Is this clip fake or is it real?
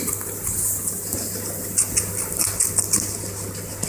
real